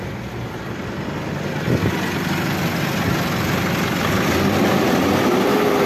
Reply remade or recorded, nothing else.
recorded